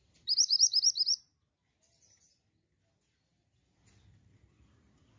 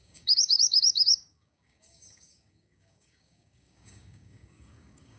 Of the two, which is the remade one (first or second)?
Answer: second